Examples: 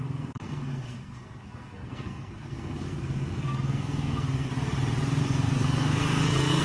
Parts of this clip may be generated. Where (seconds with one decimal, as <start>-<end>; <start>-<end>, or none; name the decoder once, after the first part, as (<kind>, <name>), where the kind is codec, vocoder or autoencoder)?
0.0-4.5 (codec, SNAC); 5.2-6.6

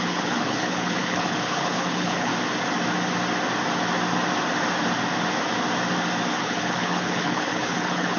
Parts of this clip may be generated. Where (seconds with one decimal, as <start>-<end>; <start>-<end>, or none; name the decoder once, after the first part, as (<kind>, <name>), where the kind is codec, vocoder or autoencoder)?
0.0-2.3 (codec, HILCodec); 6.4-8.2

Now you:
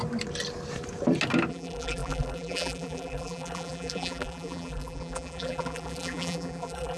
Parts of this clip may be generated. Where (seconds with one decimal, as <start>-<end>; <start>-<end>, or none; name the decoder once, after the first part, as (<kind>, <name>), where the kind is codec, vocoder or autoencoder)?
1.5-7.0 (vocoder, BigVGAN v2)